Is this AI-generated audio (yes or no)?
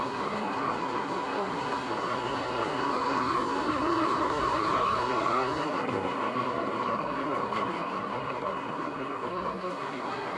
yes